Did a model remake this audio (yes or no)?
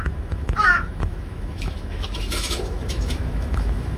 yes